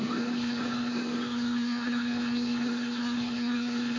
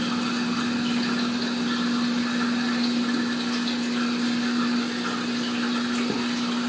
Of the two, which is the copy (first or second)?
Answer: first